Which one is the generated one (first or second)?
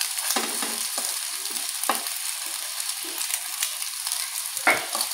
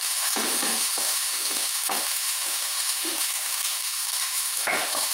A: second